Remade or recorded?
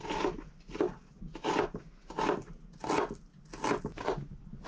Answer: recorded